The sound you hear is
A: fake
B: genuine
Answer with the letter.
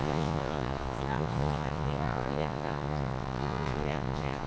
A